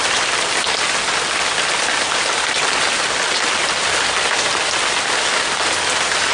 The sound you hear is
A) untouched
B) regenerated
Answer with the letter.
A